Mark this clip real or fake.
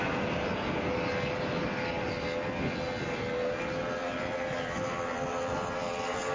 real